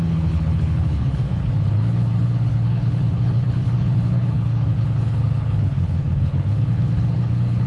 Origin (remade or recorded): remade